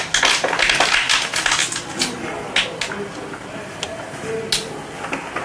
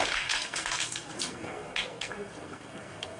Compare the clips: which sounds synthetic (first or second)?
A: second